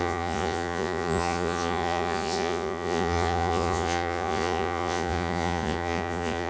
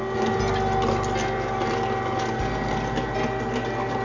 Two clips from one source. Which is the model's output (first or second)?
first